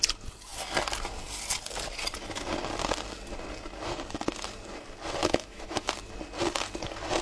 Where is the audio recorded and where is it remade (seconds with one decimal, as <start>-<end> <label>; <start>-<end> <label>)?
0.0-5.2 recorded; 5.2-5.9 remade; 5.9-7.2 recorded